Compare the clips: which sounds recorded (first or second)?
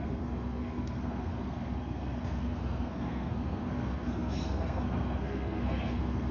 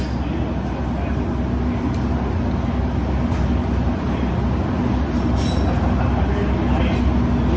second